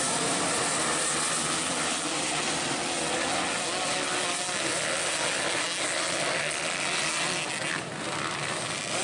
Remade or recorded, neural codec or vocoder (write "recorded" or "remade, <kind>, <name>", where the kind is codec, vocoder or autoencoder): recorded